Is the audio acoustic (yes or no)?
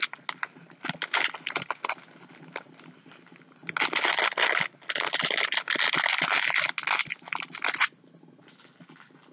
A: yes